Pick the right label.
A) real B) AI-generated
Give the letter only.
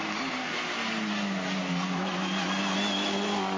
A